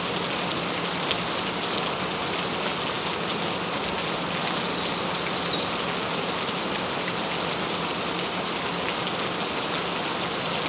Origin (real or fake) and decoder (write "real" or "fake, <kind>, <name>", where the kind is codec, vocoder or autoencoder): real